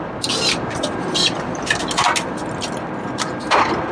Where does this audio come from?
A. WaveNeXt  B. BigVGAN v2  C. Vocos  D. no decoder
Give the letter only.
D